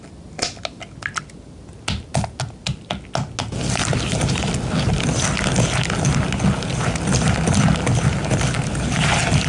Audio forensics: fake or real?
real